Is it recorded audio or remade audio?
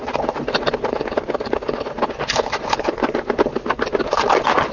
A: recorded